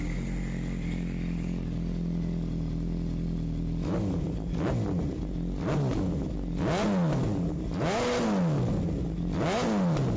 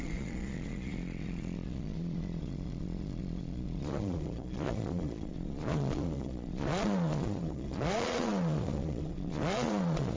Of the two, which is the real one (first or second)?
first